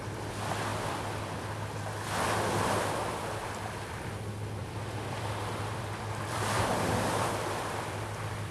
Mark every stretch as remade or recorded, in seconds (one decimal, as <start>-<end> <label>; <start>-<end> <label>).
0.0-0.7 recorded; 0.7-1.4 remade; 1.4-4.6 recorded; 4.6-8.5 remade